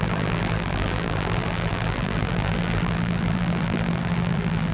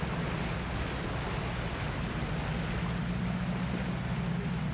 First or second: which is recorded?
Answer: second